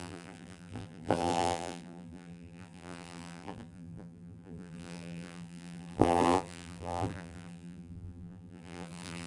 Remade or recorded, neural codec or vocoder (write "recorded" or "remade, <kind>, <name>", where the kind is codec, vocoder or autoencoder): remade, vocoder, BigVGAN v2